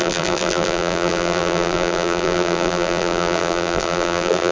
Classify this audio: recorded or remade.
remade